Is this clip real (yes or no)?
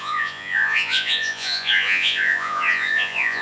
no